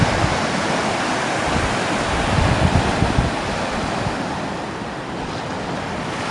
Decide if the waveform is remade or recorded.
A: recorded